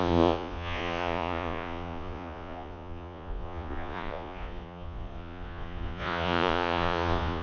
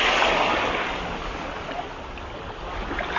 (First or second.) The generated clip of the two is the first